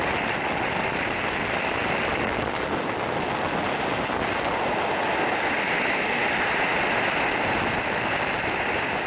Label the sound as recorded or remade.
recorded